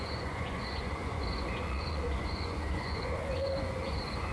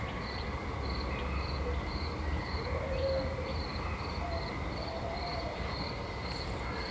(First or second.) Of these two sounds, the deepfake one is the first